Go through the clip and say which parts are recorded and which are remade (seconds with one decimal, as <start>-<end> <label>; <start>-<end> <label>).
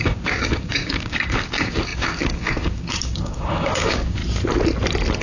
0.0-4.2 remade; 4.2-5.2 recorded